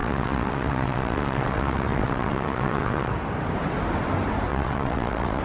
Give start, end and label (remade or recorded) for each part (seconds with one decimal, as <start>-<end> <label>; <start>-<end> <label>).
0.0-3.1 remade; 3.1-4.5 recorded; 4.5-5.4 remade